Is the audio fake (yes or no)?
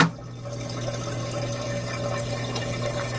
no